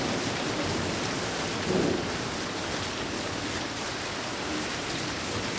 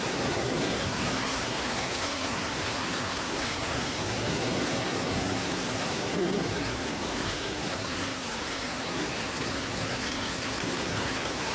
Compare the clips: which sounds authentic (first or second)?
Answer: first